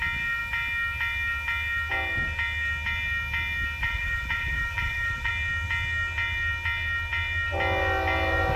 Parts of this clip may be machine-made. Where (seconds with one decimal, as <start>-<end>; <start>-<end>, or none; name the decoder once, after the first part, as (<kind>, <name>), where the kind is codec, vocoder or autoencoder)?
3.8-5.3 (vocoder, BigVGAN v2)